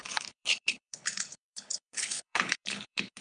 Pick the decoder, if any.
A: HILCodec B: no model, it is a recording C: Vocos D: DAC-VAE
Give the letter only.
A